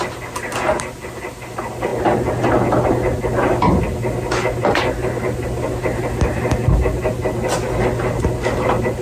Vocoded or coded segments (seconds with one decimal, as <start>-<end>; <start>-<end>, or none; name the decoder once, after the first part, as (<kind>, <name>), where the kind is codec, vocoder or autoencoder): none